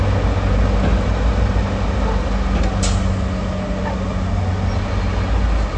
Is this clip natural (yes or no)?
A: yes